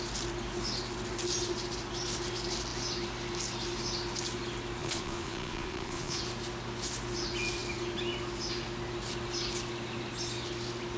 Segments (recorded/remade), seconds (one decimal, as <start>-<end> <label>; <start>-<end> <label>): 0.0-4.8 recorded; 4.8-6.2 remade; 6.2-11.0 recorded

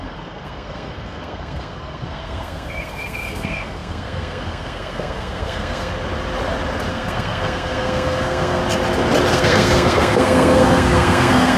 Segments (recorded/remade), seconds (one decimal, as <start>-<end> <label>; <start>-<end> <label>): 0.0-5.9 remade; 5.9-6.9 recorded; 6.9-8.6 remade; 8.6-9.3 recorded; 9.3-11.6 remade

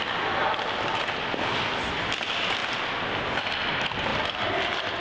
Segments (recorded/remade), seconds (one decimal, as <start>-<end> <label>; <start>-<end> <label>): 0.0-5.0 recorded